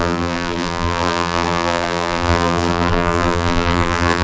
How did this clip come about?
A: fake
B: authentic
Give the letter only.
A